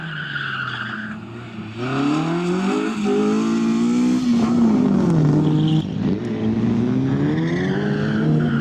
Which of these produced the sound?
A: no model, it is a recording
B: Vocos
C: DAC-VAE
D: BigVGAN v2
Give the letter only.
A